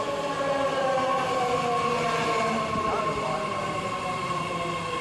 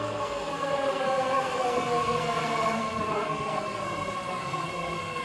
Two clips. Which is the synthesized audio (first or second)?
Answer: second